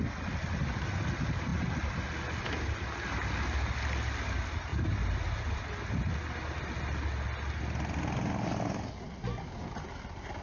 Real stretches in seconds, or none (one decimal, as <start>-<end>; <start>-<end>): 0.0-4.7; 5.7-10.4